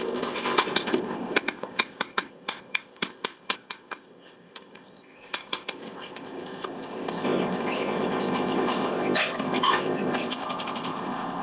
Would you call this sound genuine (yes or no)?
no